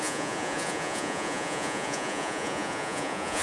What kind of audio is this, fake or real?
fake